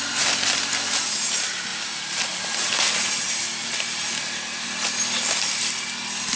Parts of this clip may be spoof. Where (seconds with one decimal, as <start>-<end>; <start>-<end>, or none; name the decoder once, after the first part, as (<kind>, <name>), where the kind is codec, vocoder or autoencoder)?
none